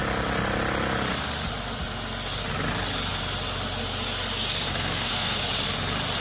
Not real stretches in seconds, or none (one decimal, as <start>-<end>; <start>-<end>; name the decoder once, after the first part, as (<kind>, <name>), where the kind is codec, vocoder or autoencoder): 4.7-5.4 (codec, SNAC)